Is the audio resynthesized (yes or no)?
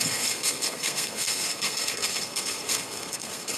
yes